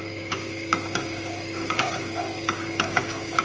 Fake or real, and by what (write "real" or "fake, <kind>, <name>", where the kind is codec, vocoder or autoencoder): fake, codec, DAC